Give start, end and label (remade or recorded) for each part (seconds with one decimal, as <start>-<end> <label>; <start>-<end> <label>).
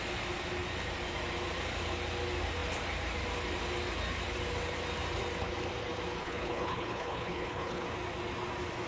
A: 0.0-6.2 recorded; 6.2-7.8 remade; 7.8-8.9 recorded